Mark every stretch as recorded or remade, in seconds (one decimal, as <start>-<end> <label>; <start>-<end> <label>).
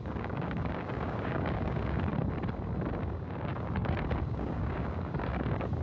0.0-2.1 remade; 2.1-3.0 recorded; 3.0-5.8 remade